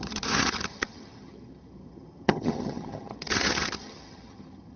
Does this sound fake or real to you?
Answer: fake